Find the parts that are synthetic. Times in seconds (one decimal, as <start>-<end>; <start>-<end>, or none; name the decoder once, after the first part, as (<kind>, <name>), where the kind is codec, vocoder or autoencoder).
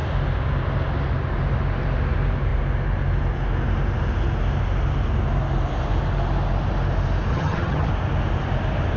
7.3-7.9 (vocoder, HiFi-GAN)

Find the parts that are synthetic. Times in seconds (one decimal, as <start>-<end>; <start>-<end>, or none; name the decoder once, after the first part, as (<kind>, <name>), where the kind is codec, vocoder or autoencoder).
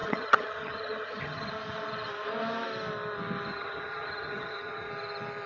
0.0-1.5 (vocoder, HiFi-GAN); 3.5-4.9